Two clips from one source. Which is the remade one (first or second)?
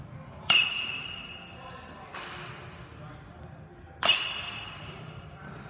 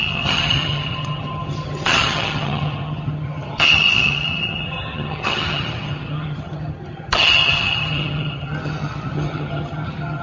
second